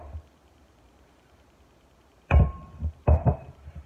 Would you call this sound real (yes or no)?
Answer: no